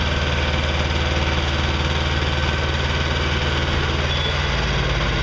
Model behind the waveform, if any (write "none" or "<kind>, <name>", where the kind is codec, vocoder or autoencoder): none